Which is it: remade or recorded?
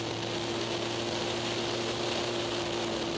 recorded